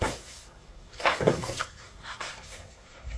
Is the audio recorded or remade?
remade